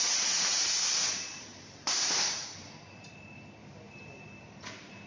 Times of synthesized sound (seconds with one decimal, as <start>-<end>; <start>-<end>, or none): 0.5-3.1; 3.6-5.1